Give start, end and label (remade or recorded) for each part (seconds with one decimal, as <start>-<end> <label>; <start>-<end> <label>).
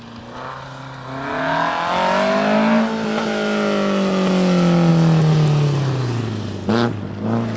0.0-7.6 recorded